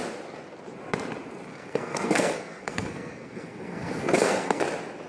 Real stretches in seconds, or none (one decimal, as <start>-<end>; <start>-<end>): 0.0-1.5; 4.6-5.1

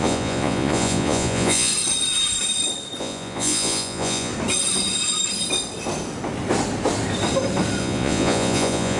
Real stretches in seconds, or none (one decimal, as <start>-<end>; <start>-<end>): 1.7-3.0; 4.3-7.8

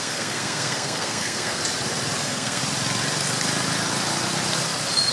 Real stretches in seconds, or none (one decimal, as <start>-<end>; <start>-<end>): 1.6-2.2; 2.6-5.1

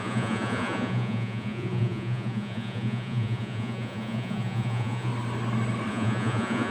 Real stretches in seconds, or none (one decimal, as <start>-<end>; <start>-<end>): 5.1-5.9

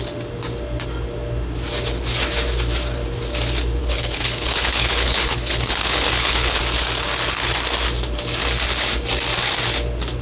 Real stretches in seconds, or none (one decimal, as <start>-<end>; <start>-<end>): 0.0-3.8; 6.6-10.2

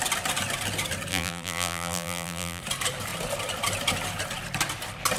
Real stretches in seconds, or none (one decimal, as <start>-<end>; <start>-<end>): 0.0-1.1; 2.6-5.2

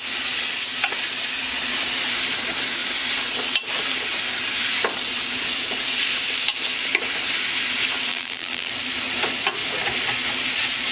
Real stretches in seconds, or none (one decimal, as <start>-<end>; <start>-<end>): 0.0-8.1; 8.7-10.9